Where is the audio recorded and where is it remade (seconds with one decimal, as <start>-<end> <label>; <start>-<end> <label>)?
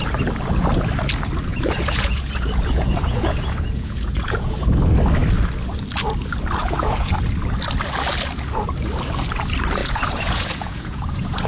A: 0.0-1.5 recorded; 1.5-4.5 remade; 4.5-6.6 recorded; 6.6-7.1 remade; 7.1-9.8 recorded; 9.8-11.5 remade